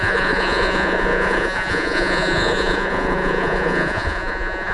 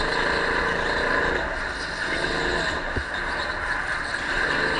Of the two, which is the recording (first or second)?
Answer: second